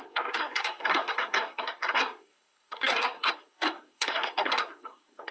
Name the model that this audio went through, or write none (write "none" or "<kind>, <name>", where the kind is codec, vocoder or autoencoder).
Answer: codec, SNAC